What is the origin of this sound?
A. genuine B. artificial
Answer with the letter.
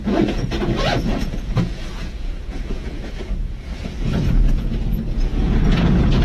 B